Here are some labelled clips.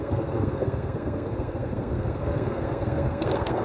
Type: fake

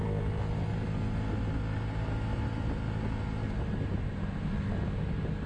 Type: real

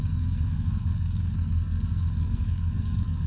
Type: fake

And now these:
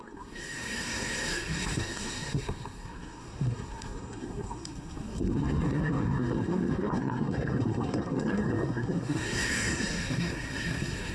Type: fake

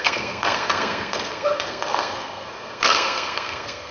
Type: fake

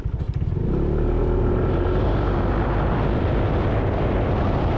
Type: real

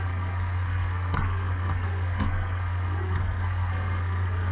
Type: fake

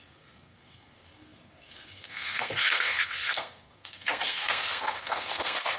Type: fake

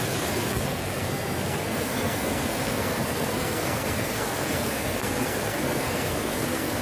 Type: fake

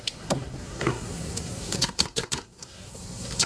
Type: fake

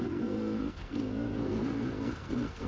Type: fake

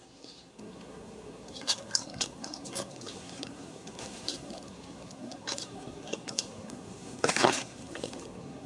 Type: fake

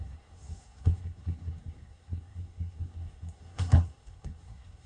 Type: fake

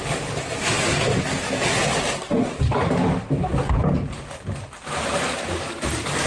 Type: real